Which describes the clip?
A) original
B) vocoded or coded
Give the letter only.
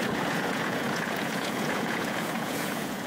B